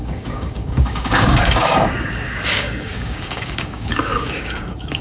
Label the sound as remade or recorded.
remade